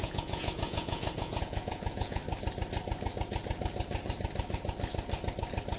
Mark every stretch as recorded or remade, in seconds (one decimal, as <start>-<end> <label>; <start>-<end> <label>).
0.0-2.2 remade; 2.2-5.8 recorded